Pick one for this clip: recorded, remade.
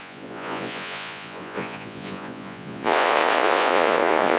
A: remade